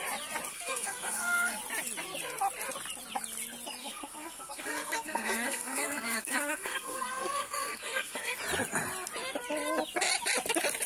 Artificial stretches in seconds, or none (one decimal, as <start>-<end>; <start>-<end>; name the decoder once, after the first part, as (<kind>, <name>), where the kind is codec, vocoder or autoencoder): 0.5-1.6 (codec, SNAC); 3.8-8.4